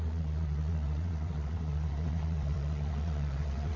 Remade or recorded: remade